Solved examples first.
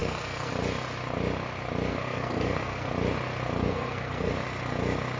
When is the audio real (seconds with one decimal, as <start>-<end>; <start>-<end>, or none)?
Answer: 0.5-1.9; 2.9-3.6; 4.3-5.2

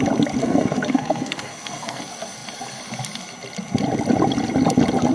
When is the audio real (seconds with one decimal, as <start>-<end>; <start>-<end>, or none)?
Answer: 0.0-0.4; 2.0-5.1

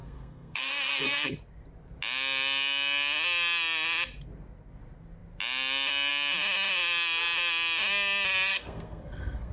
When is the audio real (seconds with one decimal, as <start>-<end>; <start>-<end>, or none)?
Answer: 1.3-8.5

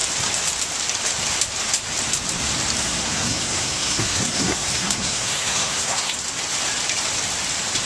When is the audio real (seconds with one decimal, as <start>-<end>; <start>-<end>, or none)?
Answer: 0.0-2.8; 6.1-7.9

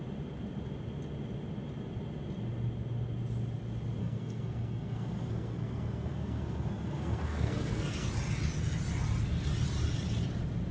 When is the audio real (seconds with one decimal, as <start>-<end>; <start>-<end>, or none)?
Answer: 0.0-4.0; 8.1-10.7